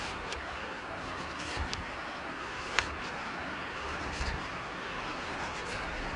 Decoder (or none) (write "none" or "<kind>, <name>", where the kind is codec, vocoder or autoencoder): codec, SNAC